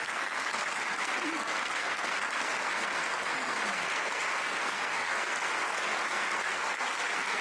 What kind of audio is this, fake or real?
fake